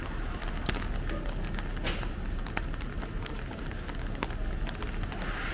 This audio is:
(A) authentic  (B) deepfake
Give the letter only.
A